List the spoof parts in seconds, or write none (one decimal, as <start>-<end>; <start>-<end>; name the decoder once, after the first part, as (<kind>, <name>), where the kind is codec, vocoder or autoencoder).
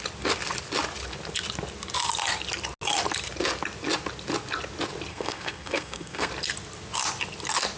5.1-6.3 (codec, SNAC)